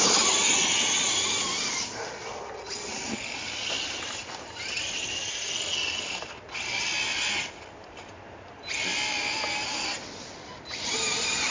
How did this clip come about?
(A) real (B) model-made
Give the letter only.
A